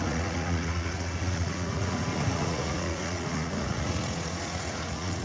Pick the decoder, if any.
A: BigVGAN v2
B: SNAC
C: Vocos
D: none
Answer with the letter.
C